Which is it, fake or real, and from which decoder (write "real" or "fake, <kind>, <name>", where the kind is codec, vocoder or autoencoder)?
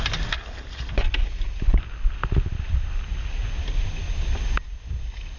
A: real